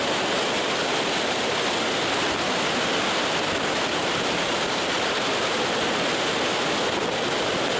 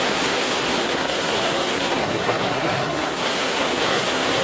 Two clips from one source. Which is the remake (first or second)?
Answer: second